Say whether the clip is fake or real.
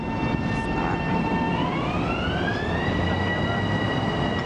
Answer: real